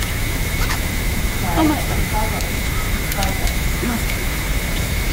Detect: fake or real fake